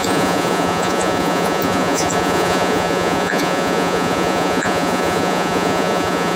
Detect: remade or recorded remade